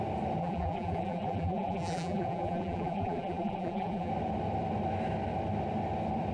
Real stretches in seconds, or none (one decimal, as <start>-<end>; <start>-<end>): 0.0-0.4; 4.1-6.3